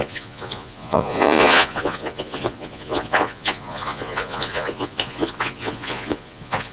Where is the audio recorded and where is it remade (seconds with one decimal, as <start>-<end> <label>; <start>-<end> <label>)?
0.0-6.7 remade